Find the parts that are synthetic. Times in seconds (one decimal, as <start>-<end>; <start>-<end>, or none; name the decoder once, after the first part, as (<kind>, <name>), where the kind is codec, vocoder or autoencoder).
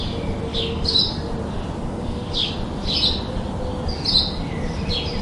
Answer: 0.5-1.1 (codec, DAC); 1.8-2.5